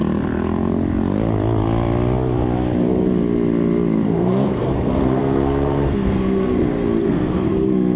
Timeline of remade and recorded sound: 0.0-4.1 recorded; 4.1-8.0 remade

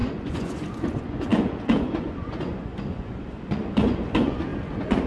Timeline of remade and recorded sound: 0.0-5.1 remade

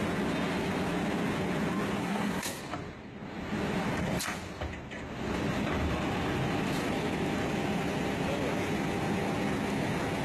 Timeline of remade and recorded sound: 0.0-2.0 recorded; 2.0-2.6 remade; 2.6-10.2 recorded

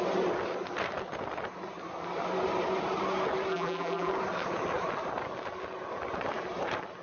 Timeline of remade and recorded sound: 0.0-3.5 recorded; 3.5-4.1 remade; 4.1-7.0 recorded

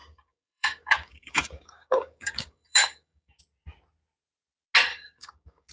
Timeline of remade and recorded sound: 0.0-3.4 remade; 3.4-4.9 recorded; 4.9-5.7 remade